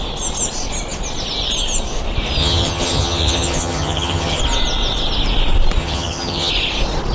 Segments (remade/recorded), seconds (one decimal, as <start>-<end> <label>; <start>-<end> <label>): 0.0-2.4 recorded; 2.4-4.4 remade; 4.4-5.8 recorded; 5.8-6.5 remade; 6.5-7.1 recorded